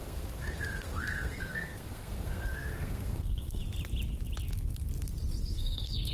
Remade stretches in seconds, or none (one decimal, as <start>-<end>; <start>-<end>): 0.0-3.6; 5.4-6.1